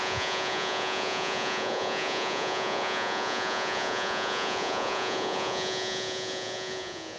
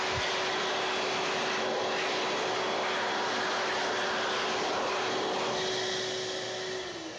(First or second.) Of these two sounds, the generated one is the first